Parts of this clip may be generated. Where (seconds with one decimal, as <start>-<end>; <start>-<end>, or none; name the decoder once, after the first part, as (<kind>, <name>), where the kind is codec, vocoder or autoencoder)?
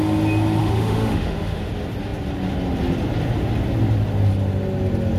0.6-1.6 (autoencoder, DAC-VAE)